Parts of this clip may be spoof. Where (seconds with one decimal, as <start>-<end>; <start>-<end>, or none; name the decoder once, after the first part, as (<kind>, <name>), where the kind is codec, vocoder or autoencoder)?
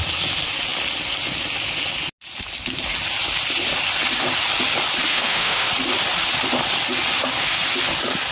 5.1-5.7 (autoencoder, DAC-VAE)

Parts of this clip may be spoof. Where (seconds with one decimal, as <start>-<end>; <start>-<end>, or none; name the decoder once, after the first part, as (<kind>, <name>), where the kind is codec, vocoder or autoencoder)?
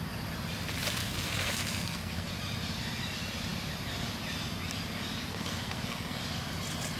1.0-2.3 (codec, SNAC); 5.3-6.2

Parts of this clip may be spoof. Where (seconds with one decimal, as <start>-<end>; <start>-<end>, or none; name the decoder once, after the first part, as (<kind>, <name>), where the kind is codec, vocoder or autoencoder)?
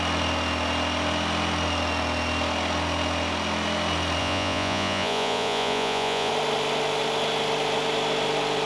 4.2-6.3 (vocoder, Vocos)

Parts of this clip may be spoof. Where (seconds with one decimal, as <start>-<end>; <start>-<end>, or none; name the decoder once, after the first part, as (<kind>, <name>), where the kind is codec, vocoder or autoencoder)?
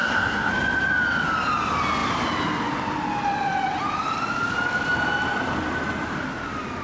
0.0-0.5 (codec, SNAC)